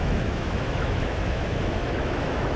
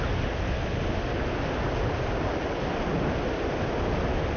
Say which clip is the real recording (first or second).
second